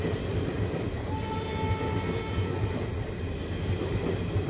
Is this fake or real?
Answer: real